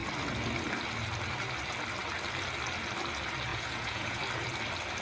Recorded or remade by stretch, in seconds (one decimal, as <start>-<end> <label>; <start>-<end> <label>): 0.0-3.5 recorded; 3.5-4.2 remade; 4.2-5.0 recorded